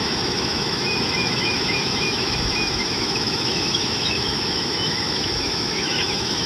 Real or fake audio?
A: fake